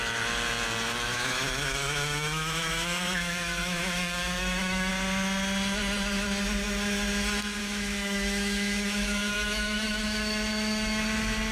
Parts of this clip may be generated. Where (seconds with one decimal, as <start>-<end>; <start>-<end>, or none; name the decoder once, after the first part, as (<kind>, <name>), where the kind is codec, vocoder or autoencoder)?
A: 1.1-4.9 (autoencoder, DAC-VAE); 7.6-11.0